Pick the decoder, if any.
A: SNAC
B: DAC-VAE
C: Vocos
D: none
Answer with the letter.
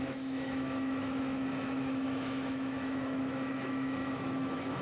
B